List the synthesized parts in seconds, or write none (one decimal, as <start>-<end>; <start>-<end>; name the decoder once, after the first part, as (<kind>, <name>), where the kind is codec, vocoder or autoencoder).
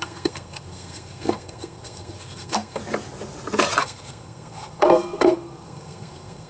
0.0-2.8 (codec, SNAC); 3.8-6.5